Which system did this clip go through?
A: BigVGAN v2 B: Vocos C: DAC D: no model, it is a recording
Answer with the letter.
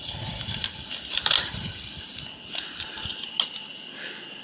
D